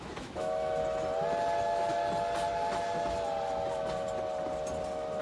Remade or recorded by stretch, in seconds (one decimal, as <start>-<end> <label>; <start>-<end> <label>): 0.0-0.8 remade; 0.8-1.6 recorded; 1.6-2.0 remade; 2.0-5.2 recorded